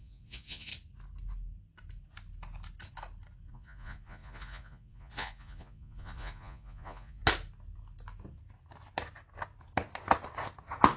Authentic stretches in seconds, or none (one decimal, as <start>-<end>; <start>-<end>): 0.7-3.5; 7.2-11.0